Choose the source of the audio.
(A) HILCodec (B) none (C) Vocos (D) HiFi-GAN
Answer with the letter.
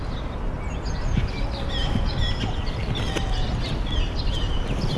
B